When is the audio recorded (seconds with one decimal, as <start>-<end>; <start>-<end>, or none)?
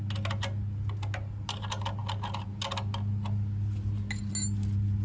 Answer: 0.0-5.0